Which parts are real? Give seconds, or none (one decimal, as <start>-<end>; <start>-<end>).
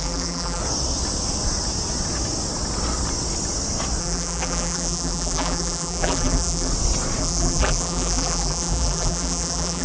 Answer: 0.6-4.0; 6.7-7.2